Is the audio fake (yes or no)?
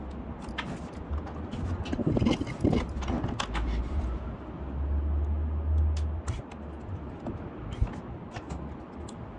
no